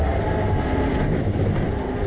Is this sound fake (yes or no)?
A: yes